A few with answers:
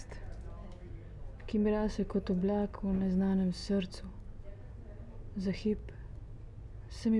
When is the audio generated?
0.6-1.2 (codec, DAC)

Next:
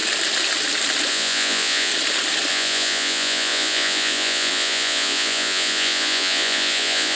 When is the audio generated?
1.1-1.9 (vocoder, Vocos); 2.5-7.1

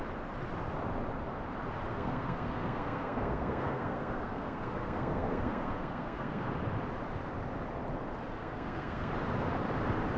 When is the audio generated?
1.9-6.5 (codec, SNAC); 8.4-9.1